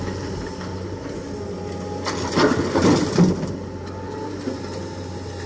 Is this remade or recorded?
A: recorded